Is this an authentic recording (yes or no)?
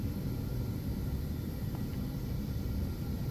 yes